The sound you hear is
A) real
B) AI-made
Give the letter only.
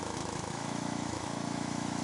B